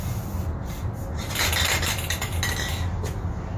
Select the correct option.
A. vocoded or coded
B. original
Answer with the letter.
B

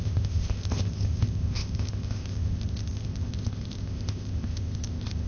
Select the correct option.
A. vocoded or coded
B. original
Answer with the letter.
A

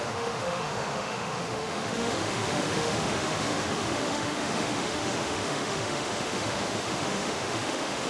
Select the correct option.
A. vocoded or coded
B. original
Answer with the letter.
A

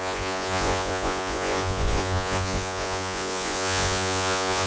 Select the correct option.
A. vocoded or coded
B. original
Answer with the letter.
A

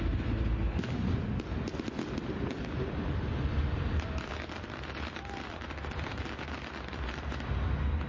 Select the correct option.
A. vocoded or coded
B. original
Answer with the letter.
B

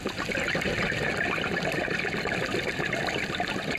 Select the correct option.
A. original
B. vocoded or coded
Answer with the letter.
A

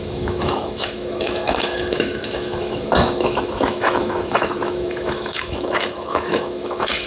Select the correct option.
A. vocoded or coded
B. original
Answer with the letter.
A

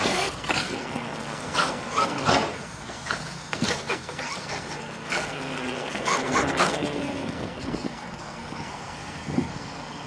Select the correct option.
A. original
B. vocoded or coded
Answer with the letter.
B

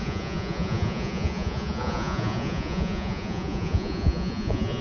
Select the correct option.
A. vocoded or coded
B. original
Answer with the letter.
A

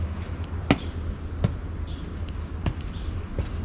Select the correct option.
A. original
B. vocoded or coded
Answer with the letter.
A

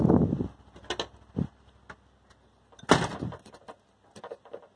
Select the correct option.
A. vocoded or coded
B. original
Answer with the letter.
B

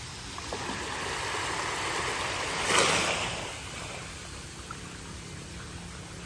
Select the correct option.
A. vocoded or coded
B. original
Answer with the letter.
B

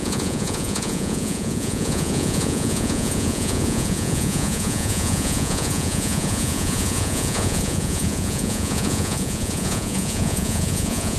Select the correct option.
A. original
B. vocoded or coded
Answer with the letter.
B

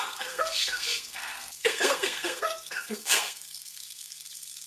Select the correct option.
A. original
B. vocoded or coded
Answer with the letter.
B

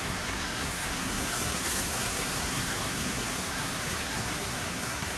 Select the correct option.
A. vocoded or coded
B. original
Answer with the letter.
A